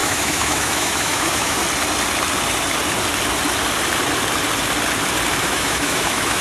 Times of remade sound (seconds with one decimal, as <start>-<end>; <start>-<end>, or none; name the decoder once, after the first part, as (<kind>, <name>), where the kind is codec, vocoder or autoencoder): 0.0-1.6 (autoencoder, DAC-VAE); 5.4-6.4